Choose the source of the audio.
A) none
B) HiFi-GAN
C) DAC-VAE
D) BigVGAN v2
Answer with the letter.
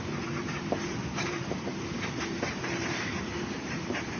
D